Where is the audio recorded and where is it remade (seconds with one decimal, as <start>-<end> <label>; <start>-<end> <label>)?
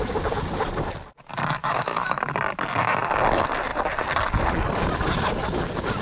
0.0-1.6 recorded; 1.6-2.2 remade; 2.2-6.0 recorded